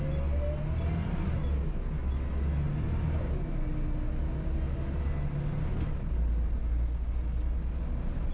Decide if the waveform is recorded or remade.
recorded